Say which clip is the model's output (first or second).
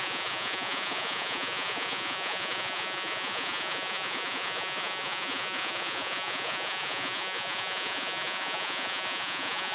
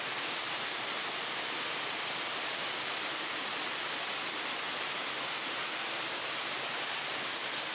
first